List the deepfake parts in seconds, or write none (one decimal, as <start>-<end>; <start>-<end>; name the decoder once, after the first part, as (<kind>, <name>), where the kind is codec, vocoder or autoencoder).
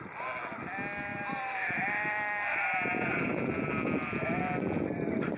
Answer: 1.1-1.7 (vocoder, BigVGAN v2); 2.5-4.4